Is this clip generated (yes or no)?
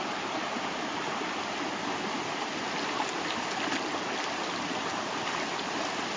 no